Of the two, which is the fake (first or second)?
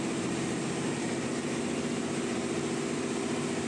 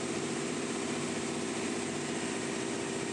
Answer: second